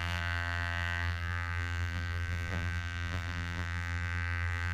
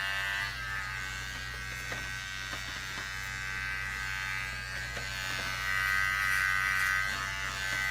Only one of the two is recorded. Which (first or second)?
second